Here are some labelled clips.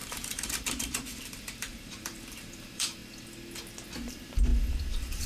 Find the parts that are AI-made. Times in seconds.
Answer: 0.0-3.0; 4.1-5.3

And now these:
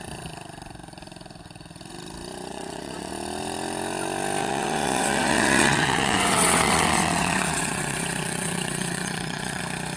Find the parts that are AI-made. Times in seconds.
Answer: 2.5-3.1; 4.4-9.6

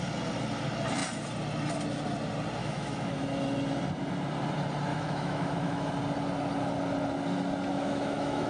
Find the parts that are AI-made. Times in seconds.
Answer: 2.6-3.2; 4.9-5.9; 7.7-8.5

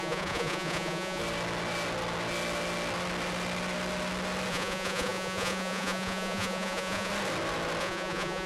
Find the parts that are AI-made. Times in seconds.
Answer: 0.0-1.2; 4.5-7.1; 7.8-8.5

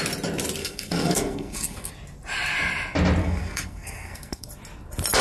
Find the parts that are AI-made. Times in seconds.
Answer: 0.6-1.9; 3.2-4.5